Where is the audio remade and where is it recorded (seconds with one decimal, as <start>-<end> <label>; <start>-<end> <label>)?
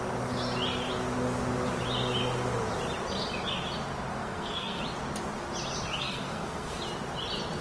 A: 0.0-4.1 recorded; 4.1-4.8 remade; 4.8-6.0 recorded; 6.0-6.8 remade; 6.8-7.6 recorded